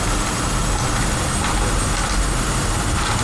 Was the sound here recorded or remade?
recorded